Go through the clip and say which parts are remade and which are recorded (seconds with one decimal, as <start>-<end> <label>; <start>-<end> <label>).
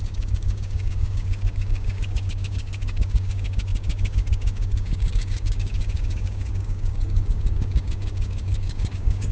0.0-9.3 remade